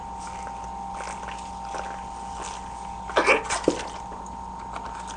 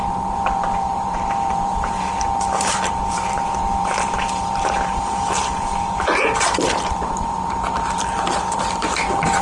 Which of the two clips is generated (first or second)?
second